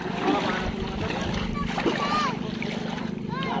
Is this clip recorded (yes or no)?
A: yes